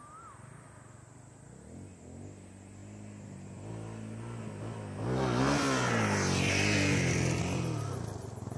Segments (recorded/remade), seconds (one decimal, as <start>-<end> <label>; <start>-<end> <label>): 0.0-8.6 recorded